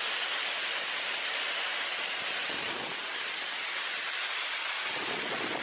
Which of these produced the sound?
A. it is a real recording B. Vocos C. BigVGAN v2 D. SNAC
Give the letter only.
A